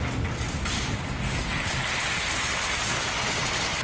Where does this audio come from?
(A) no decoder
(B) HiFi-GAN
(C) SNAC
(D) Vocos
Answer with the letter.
A